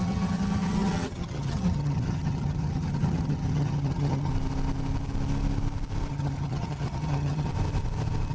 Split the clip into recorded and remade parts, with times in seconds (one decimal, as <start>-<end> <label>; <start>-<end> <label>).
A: 0.0-4.3 remade; 4.3-6.1 recorded; 6.1-7.5 remade; 7.5-8.3 recorded